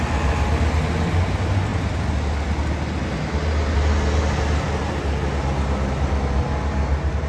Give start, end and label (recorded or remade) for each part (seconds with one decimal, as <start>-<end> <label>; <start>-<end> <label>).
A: 0.0-7.3 recorded